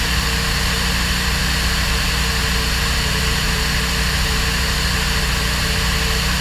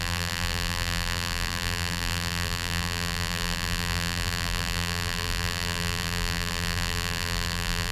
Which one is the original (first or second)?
first